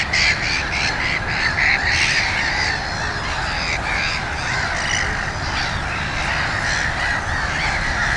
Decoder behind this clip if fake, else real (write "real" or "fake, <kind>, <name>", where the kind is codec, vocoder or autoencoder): real